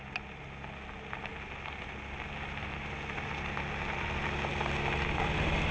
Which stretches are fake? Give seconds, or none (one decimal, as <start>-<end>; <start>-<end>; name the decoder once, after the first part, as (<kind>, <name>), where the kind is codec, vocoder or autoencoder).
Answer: none